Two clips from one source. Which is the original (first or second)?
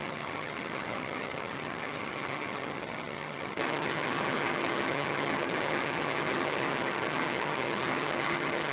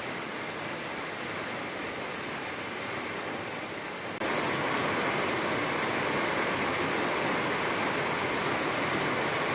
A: second